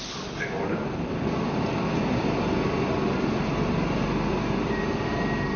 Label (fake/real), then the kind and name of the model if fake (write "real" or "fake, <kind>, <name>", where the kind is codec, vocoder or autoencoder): real